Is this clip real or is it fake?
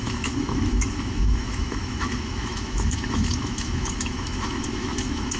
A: fake